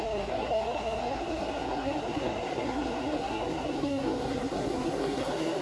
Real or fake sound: fake